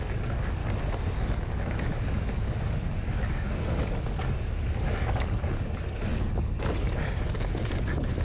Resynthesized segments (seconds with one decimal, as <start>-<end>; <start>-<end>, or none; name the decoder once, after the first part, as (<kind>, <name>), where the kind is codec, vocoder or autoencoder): 0.0-0.6 (codec, DAC); 1.2-8.2